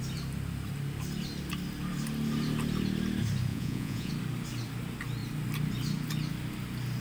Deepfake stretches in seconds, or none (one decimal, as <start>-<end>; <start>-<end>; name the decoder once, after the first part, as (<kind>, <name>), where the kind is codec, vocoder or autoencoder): 3.5-4.1 (vocoder, Vocos)